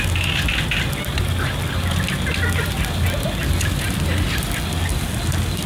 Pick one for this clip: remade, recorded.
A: recorded